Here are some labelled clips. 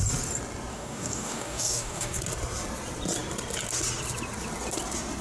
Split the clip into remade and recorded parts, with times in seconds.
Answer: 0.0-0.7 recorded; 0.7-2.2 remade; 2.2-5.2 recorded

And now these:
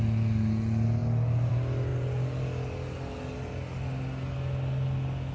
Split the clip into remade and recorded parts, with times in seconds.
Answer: 0.0-5.3 recorded

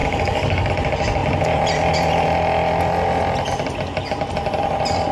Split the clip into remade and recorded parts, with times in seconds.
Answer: 0.0-0.7 remade; 0.7-5.1 recorded

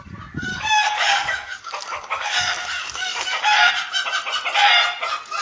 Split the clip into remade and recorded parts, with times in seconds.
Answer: 0.0-0.5 recorded; 0.5-3.7 remade; 3.7-5.4 recorded